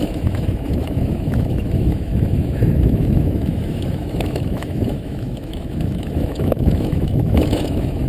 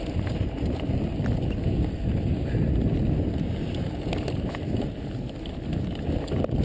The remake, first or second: first